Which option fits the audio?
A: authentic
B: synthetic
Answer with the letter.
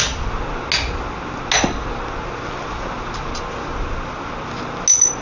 A